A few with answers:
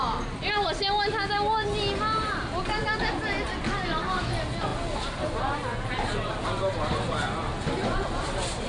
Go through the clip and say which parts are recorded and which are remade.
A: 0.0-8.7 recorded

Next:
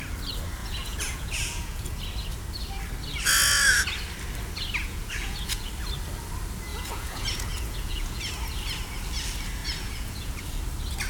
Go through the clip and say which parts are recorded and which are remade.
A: 0.0-0.6 recorded; 0.6-2.0 remade; 2.0-4.8 recorded; 4.8-5.7 remade; 5.7-6.7 recorded; 6.7-8.3 remade; 8.3-9.6 recorded; 9.6-10.4 remade; 10.4-11.1 recorded

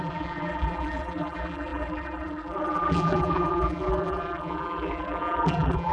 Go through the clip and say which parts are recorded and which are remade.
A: 0.0-5.9 remade

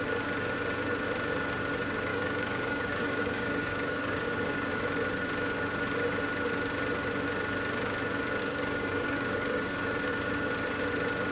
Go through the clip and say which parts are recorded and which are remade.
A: 0.0-2.1 recorded; 2.1-4.7 remade; 4.7-8.4 recorded; 8.4-10.1 remade; 10.1-11.3 recorded

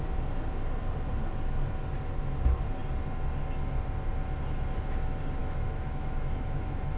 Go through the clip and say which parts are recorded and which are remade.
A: 0.0-5.4 recorded; 5.4-7.0 remade

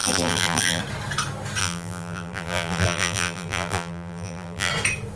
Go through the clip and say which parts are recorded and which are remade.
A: 0.0-0.8 remade; 0.8-1.6 recorded; 1.6-4.7 remade; 4.7-5.2 recorded

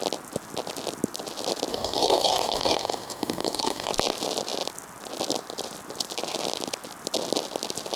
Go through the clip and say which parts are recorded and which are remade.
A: 0.0-1.7 recorded; 1.7-3.9 remade; 3.9-8.0 recorded